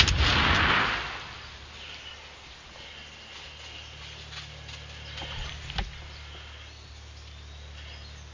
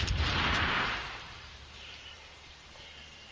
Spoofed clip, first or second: second